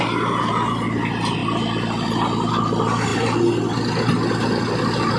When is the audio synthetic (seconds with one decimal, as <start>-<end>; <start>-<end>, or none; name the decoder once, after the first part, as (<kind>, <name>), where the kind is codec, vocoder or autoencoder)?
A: none